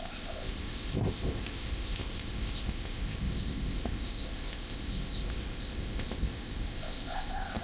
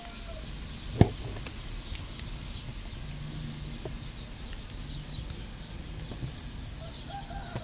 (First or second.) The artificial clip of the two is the first